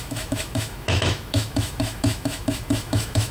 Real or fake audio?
fake